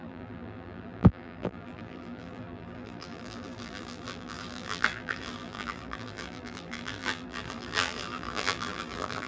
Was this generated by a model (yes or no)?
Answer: yes